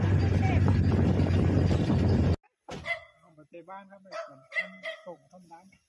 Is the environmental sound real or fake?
real